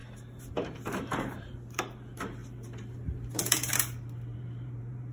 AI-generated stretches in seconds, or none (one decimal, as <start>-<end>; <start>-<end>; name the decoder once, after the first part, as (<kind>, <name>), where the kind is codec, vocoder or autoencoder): 0.0-5.1 (vocoder, BigVGAN v2)